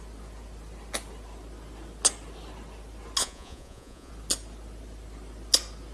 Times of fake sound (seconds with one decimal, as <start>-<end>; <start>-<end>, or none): 3.2-4.1